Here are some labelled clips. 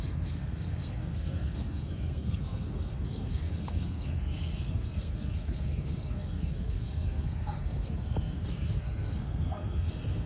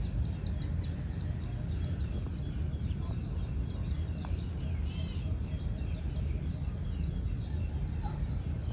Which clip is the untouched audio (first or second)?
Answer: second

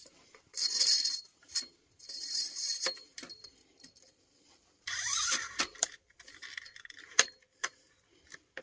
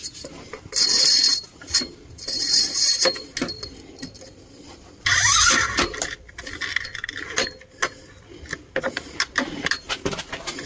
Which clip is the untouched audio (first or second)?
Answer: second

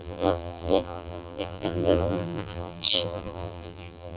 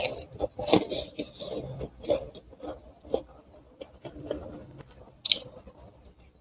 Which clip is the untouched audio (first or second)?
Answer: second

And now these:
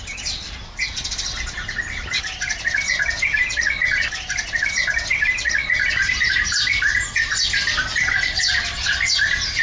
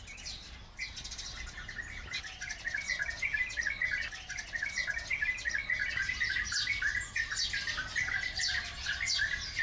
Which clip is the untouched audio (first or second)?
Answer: second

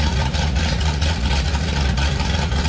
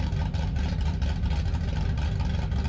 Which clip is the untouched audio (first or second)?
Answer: second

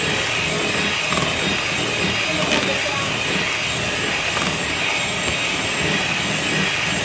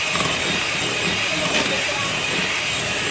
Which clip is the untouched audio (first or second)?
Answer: first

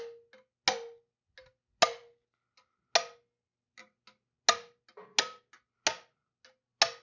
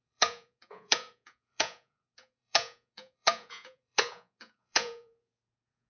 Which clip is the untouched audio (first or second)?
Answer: first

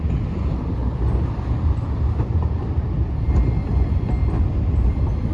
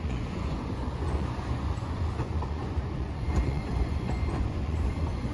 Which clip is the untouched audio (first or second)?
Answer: first